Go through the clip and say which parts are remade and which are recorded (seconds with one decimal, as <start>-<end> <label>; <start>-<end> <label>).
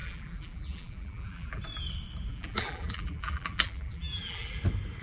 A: 0.0-1.6 remade; 1.6-2.3 recorded; 2.3-4.6 remade; 4.6-5.0 recorded